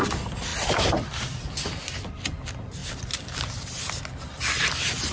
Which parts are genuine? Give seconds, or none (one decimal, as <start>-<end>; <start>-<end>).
0.0-0.5; 1.5-2.8; 4.4-5.1

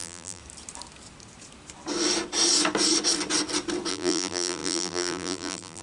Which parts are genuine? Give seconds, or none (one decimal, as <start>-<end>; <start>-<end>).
0.4-3.9

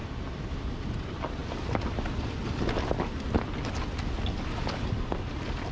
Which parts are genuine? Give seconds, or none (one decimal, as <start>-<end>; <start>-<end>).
0.0-0.6; 1.4-4.8

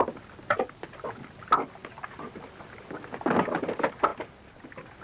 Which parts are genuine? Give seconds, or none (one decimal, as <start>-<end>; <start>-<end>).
0.0-5.0